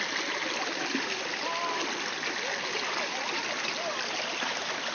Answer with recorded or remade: recorded